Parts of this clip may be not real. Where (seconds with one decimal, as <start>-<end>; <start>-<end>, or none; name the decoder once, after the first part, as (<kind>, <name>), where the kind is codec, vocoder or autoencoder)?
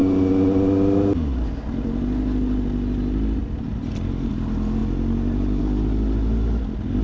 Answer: none